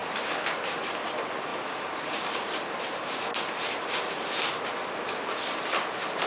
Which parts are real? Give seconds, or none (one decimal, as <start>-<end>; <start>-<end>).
0.0-1.5; 4.2-6.3